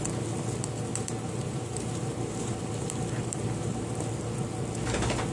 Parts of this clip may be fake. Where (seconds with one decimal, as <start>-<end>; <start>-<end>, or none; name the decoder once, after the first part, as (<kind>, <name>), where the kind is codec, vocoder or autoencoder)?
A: 0.9-4.1 (vocoder, BigVGAN v2)